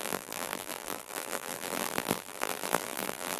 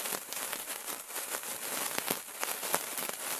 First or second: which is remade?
first